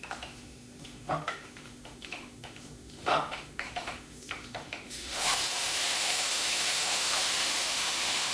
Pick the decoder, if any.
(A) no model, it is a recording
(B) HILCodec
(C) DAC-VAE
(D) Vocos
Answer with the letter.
C